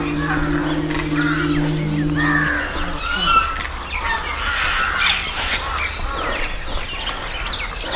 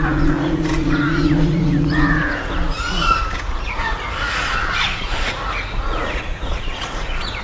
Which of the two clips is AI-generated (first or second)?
second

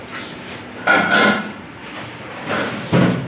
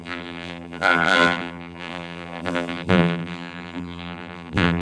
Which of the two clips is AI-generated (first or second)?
second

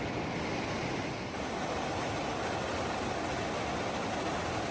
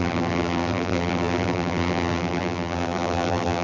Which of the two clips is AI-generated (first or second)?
second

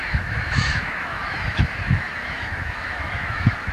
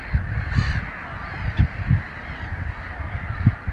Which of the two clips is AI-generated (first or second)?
first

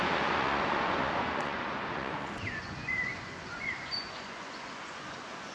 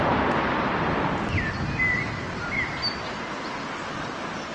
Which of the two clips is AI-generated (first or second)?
first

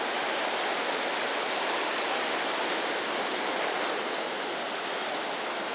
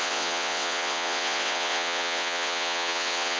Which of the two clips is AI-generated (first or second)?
second